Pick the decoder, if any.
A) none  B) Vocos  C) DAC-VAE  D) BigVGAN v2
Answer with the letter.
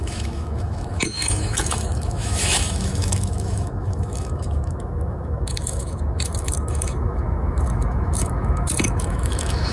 C